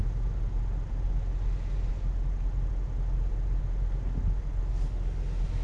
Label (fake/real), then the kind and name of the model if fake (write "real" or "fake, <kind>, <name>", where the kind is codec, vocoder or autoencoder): real